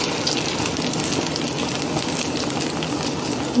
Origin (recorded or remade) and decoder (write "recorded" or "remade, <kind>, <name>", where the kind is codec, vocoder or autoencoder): recorded